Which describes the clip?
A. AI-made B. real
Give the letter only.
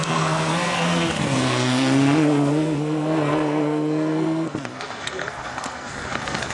A